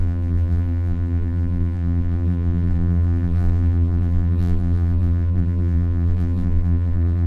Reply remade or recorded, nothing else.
remade